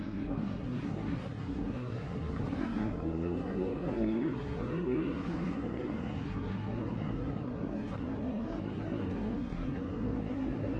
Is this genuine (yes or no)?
no